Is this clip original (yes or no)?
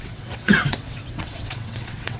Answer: no